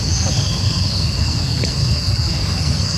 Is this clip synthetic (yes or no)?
yes